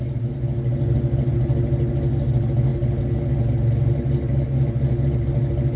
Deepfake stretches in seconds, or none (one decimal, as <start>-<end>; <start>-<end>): none